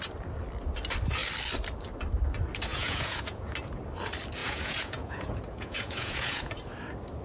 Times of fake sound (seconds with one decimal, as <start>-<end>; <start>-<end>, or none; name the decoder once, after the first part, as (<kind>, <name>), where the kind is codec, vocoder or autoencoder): 2.7-3.5 (vocoder, Vocos); 4.4-6.5